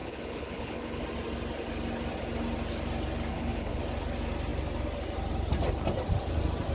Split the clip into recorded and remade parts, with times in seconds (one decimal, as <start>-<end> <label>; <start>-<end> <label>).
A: 0.0-1.0 remade; 1.0-3.3 recorded; 3.3-3.8 remade; 3.8-6.7 recorded